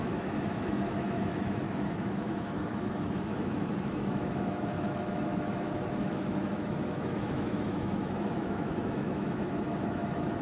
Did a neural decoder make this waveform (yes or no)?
yes